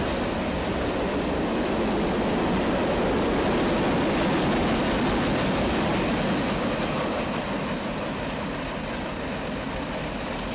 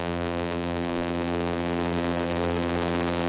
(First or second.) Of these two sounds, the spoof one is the second